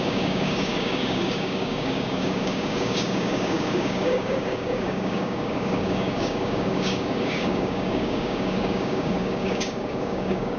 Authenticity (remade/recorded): remade